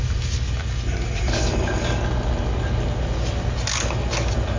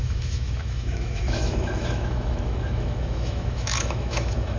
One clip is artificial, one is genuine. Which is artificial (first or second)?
second